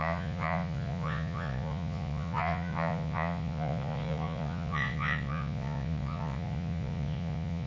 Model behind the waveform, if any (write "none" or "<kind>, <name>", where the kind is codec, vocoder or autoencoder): vocoder, Vocos